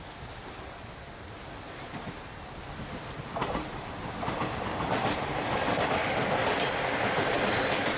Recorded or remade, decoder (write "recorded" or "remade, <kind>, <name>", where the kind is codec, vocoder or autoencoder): recorded